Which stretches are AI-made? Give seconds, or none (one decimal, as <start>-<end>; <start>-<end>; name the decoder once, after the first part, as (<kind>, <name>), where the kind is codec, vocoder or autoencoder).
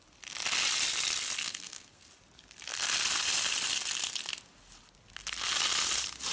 1.4-2.0 (codec, SNAC)